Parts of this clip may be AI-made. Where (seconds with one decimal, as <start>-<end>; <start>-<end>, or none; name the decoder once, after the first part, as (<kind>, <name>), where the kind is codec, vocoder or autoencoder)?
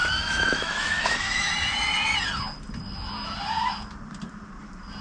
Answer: 0.0-1.5 (autoencoder, DAC-VAE)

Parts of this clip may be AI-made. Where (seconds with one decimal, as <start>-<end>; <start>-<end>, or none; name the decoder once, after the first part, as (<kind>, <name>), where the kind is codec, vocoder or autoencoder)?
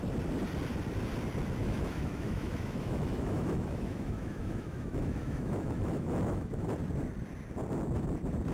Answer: 1.6-6.7 (autoencoder, DAC-VAE)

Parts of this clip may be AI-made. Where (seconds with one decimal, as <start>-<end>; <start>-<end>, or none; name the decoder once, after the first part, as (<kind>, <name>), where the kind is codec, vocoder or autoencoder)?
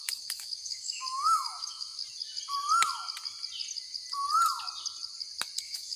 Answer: 0.0-2.0 (autoencoder, DAC-VAE); 5.6-6.0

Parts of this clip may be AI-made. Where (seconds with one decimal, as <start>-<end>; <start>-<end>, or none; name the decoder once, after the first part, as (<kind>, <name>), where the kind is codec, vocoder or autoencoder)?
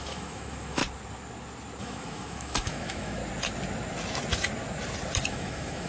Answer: 0.0-0.8 (autoencoder, DAC-VAE); 1.8-3.2; 5.3-5.9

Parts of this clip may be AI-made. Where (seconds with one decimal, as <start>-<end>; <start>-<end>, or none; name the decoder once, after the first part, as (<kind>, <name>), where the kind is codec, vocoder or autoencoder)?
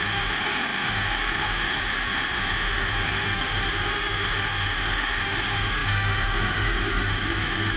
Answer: 0.0-7.8 (autoencoder, DAC-VAE)